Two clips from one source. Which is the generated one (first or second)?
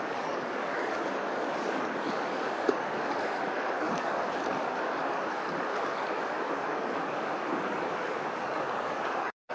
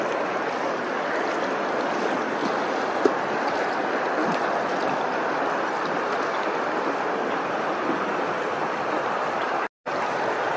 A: first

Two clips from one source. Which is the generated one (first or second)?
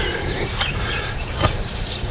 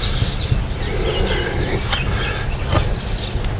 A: first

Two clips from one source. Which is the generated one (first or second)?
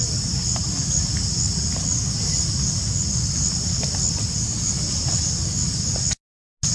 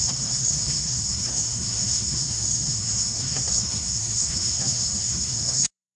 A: second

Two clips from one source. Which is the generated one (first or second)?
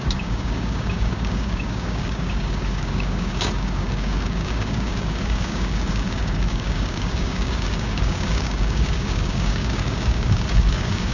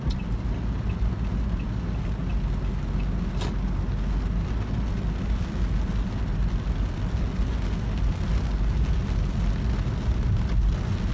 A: first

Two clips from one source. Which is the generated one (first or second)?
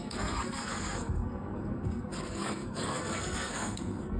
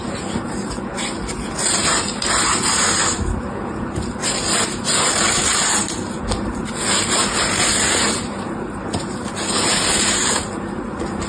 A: first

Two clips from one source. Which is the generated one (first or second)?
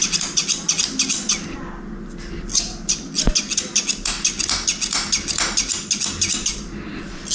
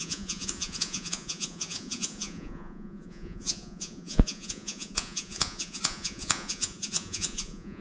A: second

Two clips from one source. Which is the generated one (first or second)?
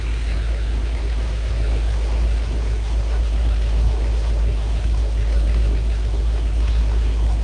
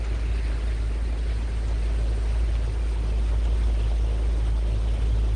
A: first